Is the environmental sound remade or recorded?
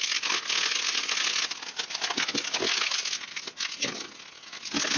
recorded